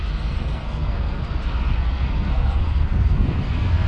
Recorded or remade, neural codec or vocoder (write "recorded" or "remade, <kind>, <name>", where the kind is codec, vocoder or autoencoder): remade, codec, SNAC